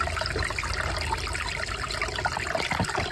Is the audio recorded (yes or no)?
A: yes